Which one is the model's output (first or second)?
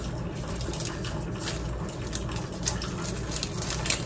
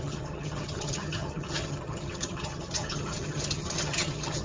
second